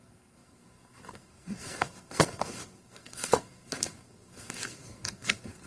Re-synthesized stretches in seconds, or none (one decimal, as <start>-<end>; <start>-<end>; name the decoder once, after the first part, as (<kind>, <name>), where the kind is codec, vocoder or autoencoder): 0.0-5.7 (codec, SNAC)